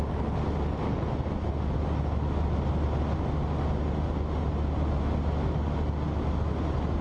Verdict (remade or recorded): recorded